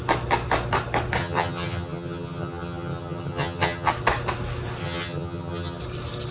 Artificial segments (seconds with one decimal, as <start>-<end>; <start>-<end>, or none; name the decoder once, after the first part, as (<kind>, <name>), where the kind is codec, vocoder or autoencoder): 1.2-3.9 (vocoder, HiFi-GAN); 4.8-5.8